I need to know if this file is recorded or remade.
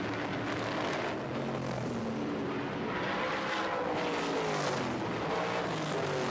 recorded